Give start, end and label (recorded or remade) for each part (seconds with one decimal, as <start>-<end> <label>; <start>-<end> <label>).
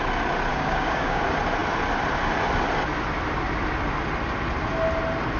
0.0-0.5 recorded; 0.5-1.2 remade; 1.2-5.4 recorded